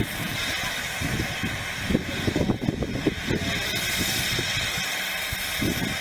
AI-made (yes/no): no